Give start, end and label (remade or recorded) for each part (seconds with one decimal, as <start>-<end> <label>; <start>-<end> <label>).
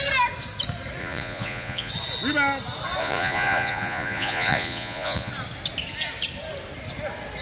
0.0-1.0 recorded; 1.0-1.9 remade; 1.9-3.0 recorded; 3.0-5.3 remade; 5.3-7.4 recorded